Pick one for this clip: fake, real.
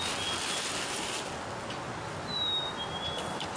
real